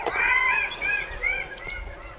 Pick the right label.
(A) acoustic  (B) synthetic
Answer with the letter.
B